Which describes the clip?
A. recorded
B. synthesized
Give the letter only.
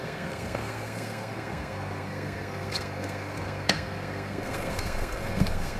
B